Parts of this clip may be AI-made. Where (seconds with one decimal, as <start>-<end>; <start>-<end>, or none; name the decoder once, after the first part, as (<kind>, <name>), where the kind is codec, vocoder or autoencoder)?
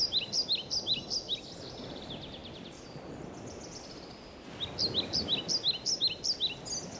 none